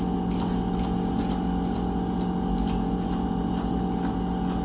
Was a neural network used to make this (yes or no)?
no